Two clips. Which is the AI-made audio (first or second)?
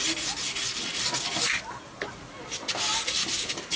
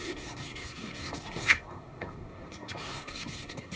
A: second